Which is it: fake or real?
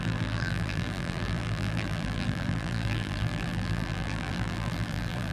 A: fake